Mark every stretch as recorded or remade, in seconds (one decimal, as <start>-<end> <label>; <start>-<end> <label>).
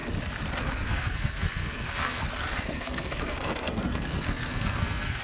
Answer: 0.0-0.6 recorded; 0.6-2.2 remade; 2.2-2.7 recorded; 2.7-5.2 remade